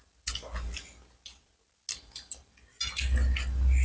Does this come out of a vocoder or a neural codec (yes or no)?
no